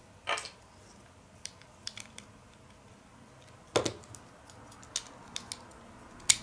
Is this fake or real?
real